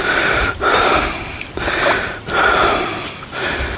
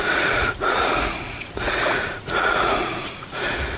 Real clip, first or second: first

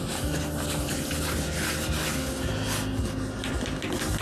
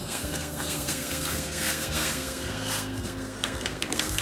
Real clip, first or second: first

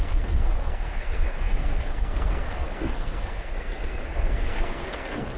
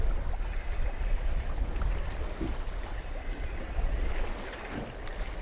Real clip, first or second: second